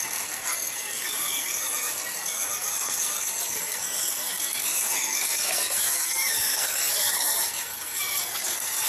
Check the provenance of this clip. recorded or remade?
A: remade